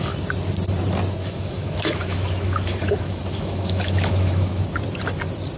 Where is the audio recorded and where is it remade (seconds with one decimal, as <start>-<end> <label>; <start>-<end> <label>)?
0.0-1.2 recorded; 1.2-4.6 remade; 4.6-5.6 recorded